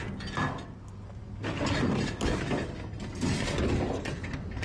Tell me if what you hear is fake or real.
real